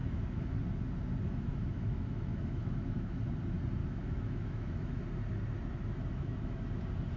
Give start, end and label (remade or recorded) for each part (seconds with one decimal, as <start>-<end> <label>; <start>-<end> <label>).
0.0-0.6 remade; 0.6-1.5 recorded; 1.5-3.2 remade; 3.2-3.8 recorded; 3.8-5.0 remade; 5.0-6.1 recorded; 6.1-6.8 remade; 6.8-7.2 recorded